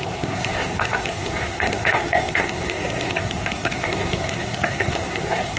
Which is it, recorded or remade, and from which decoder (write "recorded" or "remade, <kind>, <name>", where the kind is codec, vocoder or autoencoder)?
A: remade, codec, SNAC